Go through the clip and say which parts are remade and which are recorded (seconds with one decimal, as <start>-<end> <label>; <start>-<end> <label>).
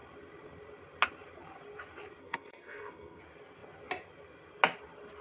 0.0-2.2 recorded; 2.2-3.2 remade; 3.2-5.2 recorded